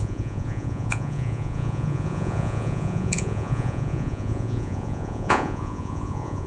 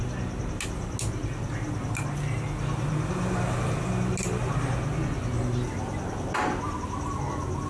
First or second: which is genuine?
second